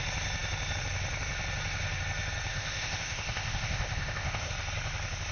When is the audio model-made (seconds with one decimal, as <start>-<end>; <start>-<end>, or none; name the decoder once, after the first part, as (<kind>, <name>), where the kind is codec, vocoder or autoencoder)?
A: 2.5-4.5 (codec, ZipCodec)